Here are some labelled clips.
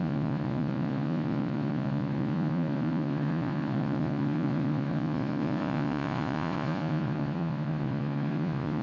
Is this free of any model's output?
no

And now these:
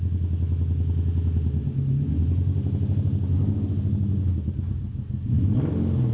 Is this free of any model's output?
yes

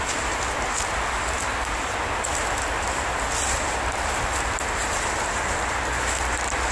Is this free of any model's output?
yes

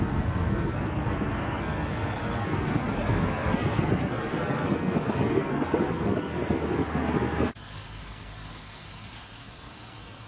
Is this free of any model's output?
no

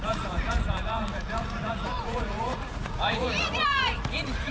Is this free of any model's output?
no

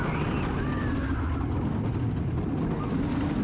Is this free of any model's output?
yes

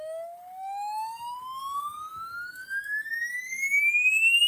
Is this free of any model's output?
no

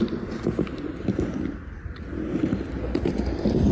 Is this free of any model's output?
yes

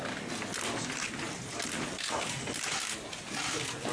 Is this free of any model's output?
yes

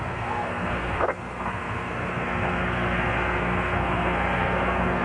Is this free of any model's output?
no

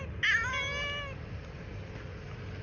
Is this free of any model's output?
yes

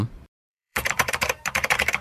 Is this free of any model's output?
no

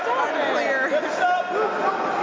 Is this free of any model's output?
yes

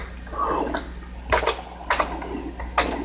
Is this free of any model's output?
yes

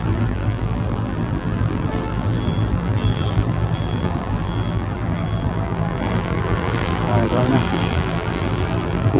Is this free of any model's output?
no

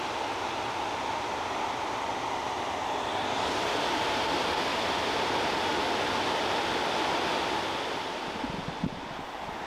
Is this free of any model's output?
yes